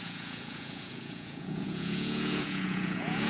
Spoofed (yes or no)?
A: yes